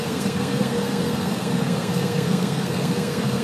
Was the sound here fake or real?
fake